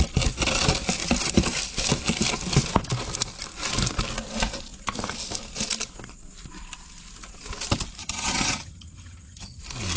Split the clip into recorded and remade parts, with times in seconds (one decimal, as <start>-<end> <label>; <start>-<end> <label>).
0.0-8.0 recorded; 8.0-9.6 remade; 9.6-10.0 recorded